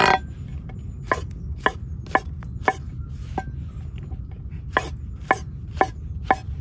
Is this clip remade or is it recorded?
recorded